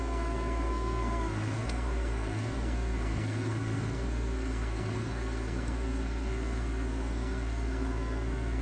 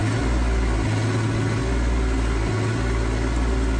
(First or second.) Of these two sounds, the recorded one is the second